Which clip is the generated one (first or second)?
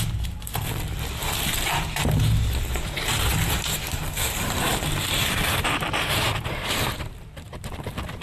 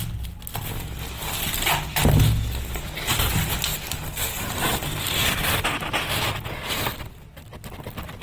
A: first